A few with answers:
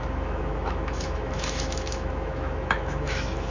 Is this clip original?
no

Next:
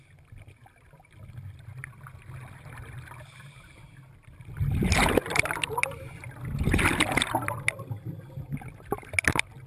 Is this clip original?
yes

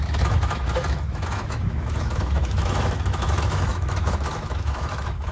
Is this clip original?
no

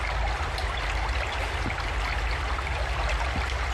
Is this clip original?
yes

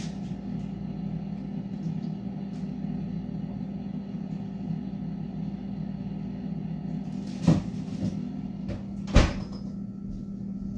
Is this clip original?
yes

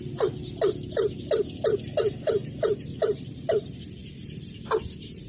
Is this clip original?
yes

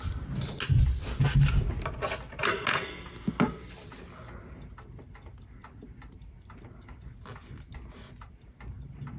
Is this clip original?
yes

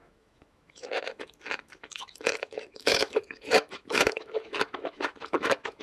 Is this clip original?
no